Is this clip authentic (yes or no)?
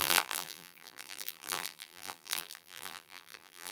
no